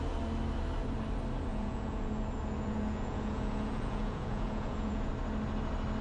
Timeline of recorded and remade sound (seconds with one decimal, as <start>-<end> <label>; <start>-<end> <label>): 0.0-1.5 recorded; 1.5-5.1 remade; 5.1-6.0 recorded